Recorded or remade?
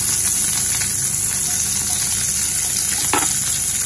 recorded